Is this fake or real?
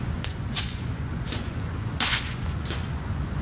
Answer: fake